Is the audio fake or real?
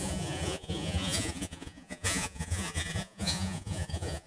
fake